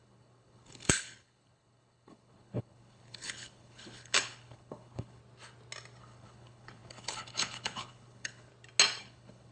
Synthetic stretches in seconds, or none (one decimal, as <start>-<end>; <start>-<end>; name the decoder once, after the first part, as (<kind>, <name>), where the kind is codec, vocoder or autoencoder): 0.0-5.2 (codec, HILCodec); 6.0-8.5; 9.0-9.5